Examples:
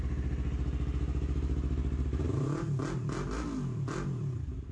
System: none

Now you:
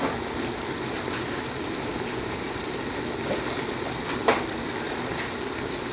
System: none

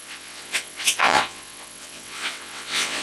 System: vocoder, WaveNeXt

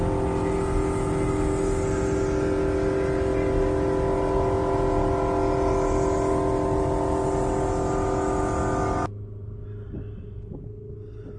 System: none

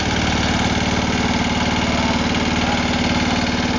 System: none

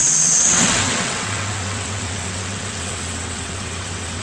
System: vocoder, WaveNeXt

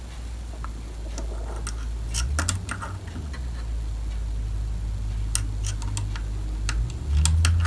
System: none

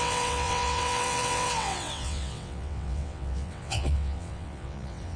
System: vocoder, WaveNeXt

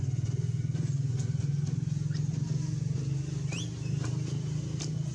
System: none